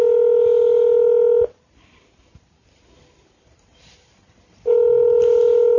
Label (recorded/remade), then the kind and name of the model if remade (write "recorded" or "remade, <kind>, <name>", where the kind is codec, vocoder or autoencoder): recorded